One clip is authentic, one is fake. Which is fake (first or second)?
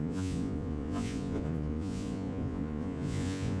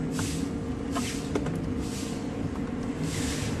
first